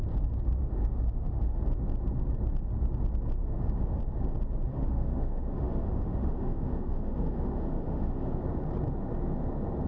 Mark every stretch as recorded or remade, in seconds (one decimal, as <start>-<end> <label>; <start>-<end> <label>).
0.0-0.6 recorded; 0.6-1.6 remade; 1.6-3.4 recorded; 3.4-4.0 remade; 4.0-4.7 recorded; 4.7-8.4 remade; 8.4-9.9 recorded